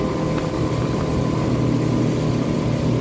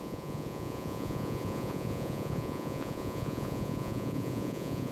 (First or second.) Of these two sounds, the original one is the first